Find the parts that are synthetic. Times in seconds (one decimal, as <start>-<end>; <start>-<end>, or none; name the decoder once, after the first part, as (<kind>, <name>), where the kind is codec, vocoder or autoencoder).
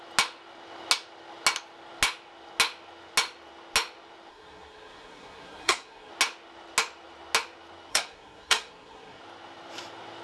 4.3-6.1 (codec, SNAC); 7.9-9.2